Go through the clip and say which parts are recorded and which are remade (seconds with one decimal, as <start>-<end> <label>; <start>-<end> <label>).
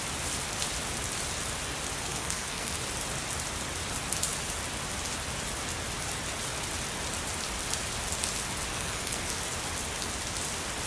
0.0-2.0 recorded; 2.0-2.7 remade; 2.7-8.7 recorded; 8.7-9.3 remade; 9.3-10.9 recorded